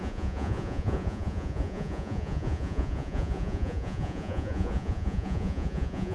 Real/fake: fake